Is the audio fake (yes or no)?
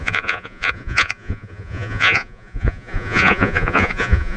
yes